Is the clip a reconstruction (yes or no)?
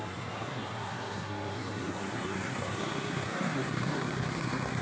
yes